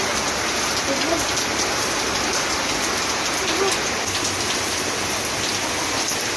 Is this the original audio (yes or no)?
yes